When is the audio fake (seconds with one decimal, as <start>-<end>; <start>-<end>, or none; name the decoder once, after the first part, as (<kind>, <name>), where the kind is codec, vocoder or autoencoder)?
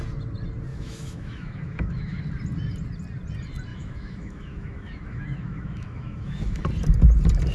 0.7-2.2 (autoencoder, DAC-VAE); 3.7-6.6